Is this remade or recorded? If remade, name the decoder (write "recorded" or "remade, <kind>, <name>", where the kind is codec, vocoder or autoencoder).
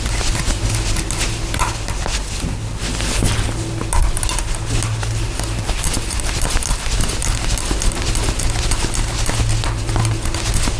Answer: recorded